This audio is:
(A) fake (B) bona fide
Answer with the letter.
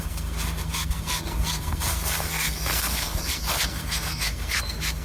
A